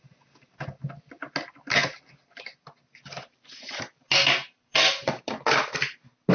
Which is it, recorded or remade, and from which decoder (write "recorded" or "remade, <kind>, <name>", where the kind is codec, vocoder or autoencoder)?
recorded